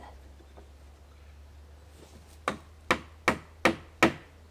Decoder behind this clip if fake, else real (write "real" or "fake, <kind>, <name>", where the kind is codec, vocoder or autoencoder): real